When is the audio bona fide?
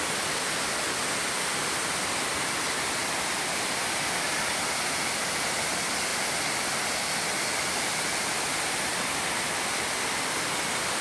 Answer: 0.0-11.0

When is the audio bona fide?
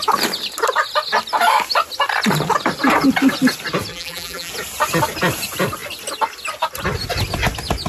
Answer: 0.0-3.9; 4.5-7.9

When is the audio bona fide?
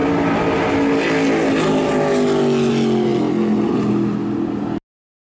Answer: 0.0-5.3